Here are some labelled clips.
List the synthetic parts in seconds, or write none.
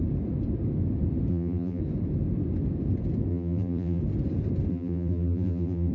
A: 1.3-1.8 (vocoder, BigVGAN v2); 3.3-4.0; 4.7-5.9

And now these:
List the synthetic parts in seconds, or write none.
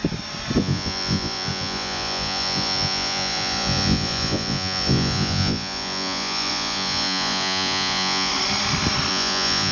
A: 0.6-8.3 (vocoder, Vocos); 9.1-9.7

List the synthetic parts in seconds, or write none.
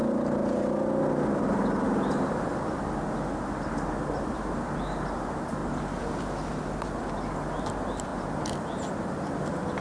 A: none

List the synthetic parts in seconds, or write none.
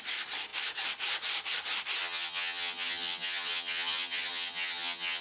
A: 2.0-5.2 (vocoder, HiFi-GAN)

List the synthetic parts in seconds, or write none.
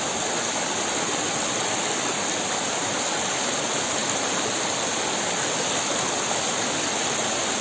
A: none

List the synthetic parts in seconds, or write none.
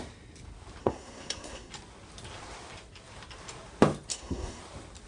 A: 0.8-1.7 (codec, SNAC); 4.1-4.6